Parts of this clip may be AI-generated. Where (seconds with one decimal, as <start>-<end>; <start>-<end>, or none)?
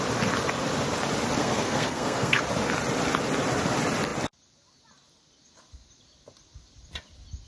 1.4-2.4